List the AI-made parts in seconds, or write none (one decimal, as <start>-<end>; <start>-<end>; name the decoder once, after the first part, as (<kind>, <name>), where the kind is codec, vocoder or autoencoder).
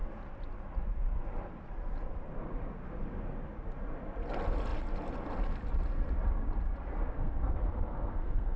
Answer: 7.1-8.6 (codec, SNAC)